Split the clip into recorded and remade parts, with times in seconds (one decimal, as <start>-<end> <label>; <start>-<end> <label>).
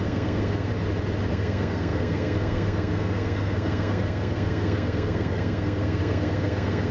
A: 0.0-0.7 remade; 0.7-1.3 recorded; 1.3-6.9 remade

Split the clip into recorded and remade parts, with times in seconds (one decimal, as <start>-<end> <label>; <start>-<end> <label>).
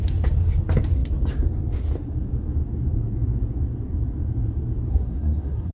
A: 0.0-4.9 recorded; 4.9-5.7 remade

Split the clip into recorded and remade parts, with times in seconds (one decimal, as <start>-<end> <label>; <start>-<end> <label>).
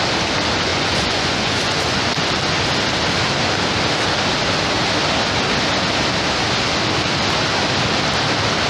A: 0.0-0.7 recorded; 0.7-2.3 remade; 2.3-8.7 recorded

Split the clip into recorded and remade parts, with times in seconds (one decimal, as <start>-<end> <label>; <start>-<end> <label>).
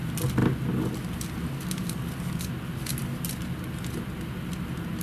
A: 0.0-5.0 recorded